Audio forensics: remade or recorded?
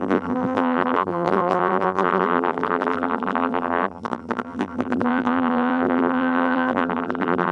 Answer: remade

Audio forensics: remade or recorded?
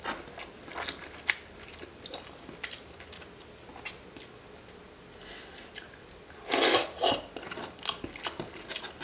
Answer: recorded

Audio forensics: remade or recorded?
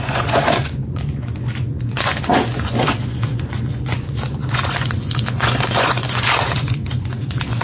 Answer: remade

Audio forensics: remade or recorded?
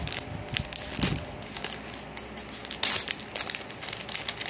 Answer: recorded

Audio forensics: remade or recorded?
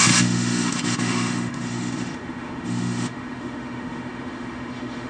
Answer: remade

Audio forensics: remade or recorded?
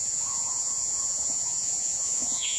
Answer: remade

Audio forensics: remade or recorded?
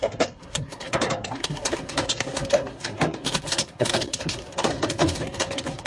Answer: remade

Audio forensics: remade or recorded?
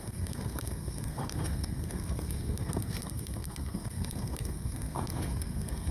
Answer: remade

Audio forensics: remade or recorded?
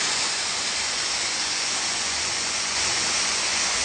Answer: remade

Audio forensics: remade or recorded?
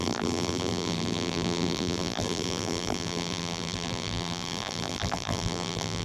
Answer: remade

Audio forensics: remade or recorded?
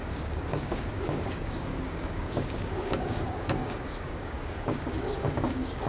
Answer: remade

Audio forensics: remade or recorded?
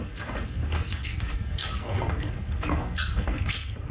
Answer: remade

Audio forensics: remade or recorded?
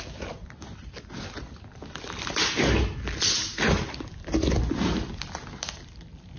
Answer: recorded